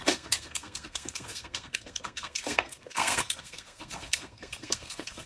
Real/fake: fake